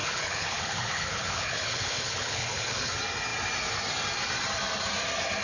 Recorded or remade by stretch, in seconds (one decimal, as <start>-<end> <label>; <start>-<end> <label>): 0.0-2.9 remade; 2.9-5.4 recorded